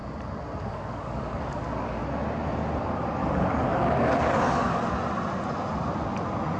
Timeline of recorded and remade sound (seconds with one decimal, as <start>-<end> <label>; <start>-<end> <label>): 0.0-0.6 recorded; 0.6-2.0 remade; 2.0-3.1 recorded; 3.1-5.0 remade; 5.0-6.6 recorded